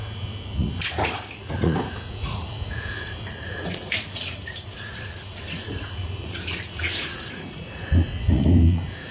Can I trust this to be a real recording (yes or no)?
no